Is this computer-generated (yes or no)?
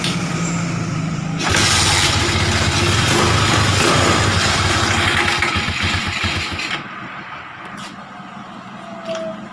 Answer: no